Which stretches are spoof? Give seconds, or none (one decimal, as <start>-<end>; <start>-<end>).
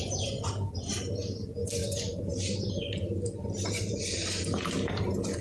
1.8-5.0